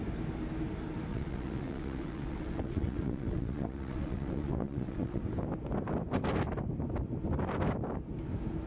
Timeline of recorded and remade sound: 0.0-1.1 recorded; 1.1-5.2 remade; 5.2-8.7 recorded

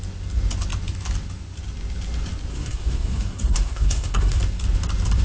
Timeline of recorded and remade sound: 0.0-2.5 recorded; 2.5-4.4 remade; 4.4-5.2 recorded

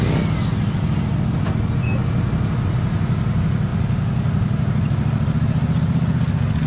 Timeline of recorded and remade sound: 0.0-6.7 recorded

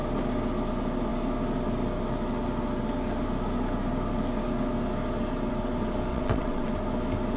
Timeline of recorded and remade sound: 0.0-6.1 recorded; 6.1-6.7 remade; 6.7-7.4 recorded

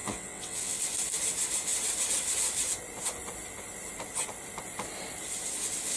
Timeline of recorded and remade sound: 0.0-0.8 remade; 0.8-6.0 recorded

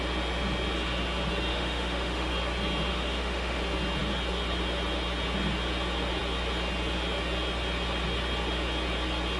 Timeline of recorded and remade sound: 0.0-1.5 recorded; 1.5-2.3 remade; 2.3-2.9 recorded; 2.9-3.6 remade; 3.6-9.4 recorded

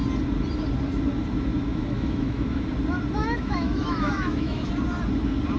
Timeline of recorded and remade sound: 0.0-1.7 recorded; 1.7-2.7 remade; 2.7-3.2 recorded; 3.2-4.7 remade; 4.7-5.6 recorded

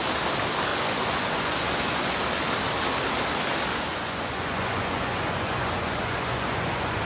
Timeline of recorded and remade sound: 0.0-0.7 recorded; 0.7-2.2 remade; 2.2-3.7 recorded; 3.7-7.0 remade